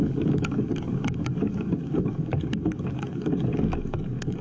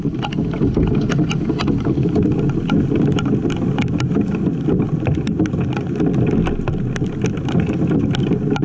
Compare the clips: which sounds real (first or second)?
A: second